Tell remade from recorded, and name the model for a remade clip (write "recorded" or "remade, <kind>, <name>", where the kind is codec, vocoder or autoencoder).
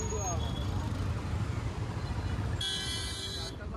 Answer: recorded